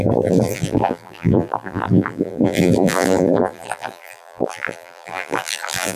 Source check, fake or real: fake